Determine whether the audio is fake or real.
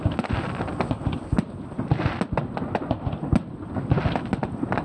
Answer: real